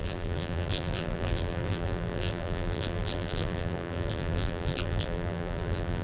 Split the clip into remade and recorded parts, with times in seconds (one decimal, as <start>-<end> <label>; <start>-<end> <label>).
0.0-6.0 remade

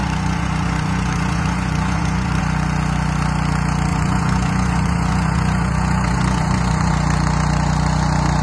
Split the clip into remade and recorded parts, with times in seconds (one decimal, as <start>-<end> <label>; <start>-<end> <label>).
0.0-2.4 remade; 2.4-3.9 recorded; 3.9-6.9 remade; 6.9-8.4 recorded

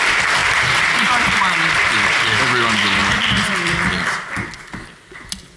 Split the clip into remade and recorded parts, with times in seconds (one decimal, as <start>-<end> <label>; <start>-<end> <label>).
0.0-0.4 recorded; 0.4-1.1 remade; 1.1-5.6 recorded

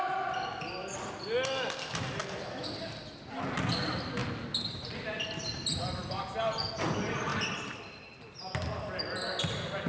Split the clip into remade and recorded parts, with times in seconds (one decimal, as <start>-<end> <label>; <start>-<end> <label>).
0.0-2.2 recorded; 2.2-3.2 remade; 3.2-7.3 recorded; 7.3-8.1 remade; 8.1-9.9 recorded